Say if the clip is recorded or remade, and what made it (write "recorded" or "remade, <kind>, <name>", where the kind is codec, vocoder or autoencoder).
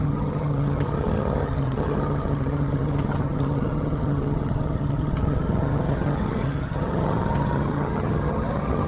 remade, vocoder, HiFi-GAN